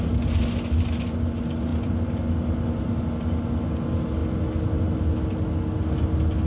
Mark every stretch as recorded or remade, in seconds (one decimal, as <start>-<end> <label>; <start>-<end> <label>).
0.0-6.5 recorded